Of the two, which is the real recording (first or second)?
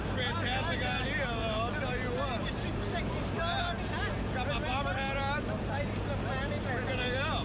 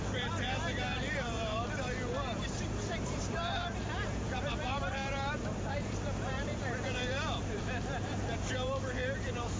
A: first